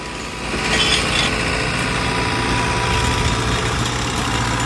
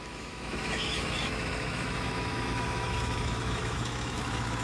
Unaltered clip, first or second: first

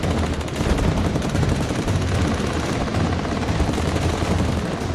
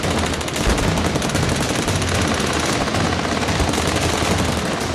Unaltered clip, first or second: second